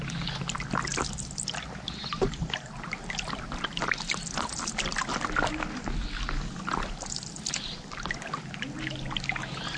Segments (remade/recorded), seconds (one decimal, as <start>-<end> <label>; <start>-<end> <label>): 0.0-9.8 recorded